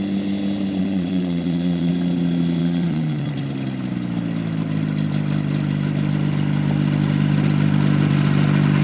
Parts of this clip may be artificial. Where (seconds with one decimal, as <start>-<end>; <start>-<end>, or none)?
0.8-1.9; 2.6-3.3